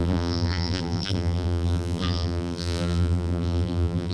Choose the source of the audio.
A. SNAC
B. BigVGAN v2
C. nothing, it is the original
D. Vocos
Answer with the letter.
B